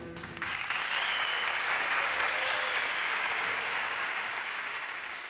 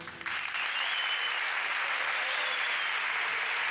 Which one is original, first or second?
second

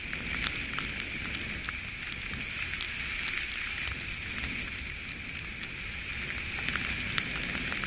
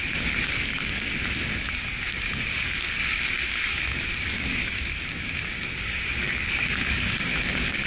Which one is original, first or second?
first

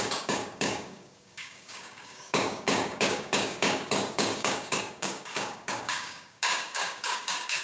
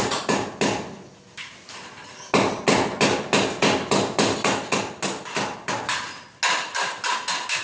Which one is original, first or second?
second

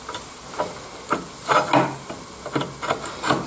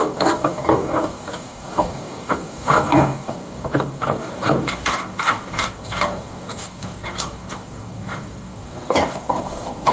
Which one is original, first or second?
first